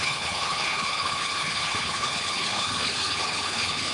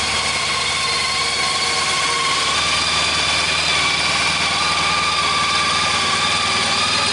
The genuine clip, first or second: second